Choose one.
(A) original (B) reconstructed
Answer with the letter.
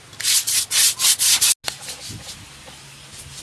A